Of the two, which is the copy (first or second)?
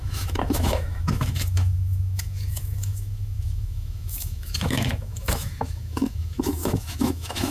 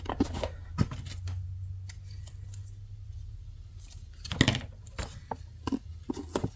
first